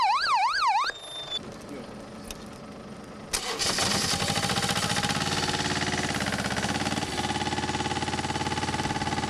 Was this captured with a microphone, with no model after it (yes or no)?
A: yes